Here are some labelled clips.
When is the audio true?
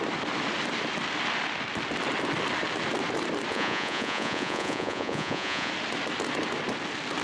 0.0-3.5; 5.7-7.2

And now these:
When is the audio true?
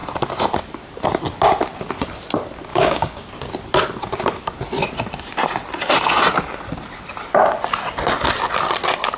0.0-2.7; 3.3-9.2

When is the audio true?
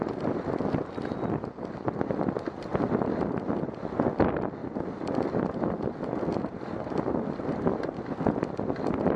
0.0-9.2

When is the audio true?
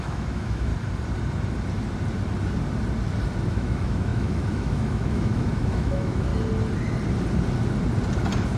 0.7-3.5; 6.3-8.6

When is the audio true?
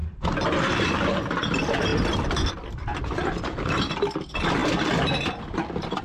0.0-6.0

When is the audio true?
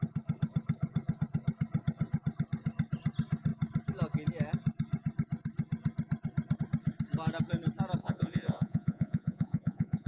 0.0-8.0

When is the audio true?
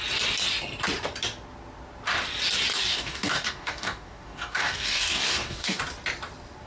0.0-2.7; 5.8-6.7